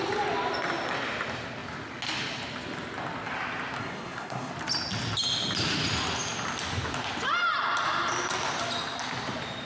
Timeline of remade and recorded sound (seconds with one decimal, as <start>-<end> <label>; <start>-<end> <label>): 0.0-3.8 recorded; 3.8-4.5 remade; 4.5-9.6 recorded